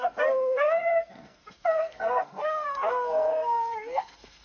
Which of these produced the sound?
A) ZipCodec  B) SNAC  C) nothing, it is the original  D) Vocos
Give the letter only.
B